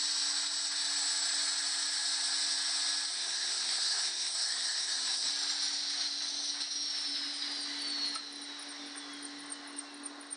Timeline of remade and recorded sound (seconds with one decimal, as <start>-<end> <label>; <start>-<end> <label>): 0.0-3.1 recorded; 3.1-5.3 remade; 5.3-10.4 recorded